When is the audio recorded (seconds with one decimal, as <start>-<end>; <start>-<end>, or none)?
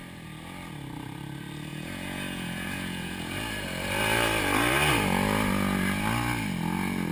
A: 0.0-1.7; 3.2-7.1